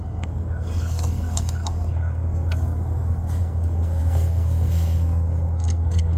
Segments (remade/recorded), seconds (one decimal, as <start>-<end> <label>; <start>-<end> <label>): 0.0-6.2 remade